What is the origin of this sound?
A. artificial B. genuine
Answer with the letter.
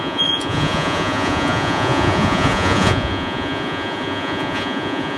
A